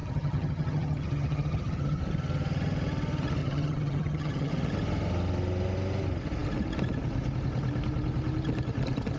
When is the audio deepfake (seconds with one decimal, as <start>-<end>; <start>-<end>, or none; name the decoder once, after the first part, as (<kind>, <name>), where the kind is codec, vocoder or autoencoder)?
0.0-2.0 (vocoder, HiFi-GAN); 3.4-4.5